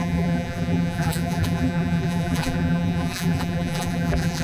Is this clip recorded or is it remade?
remade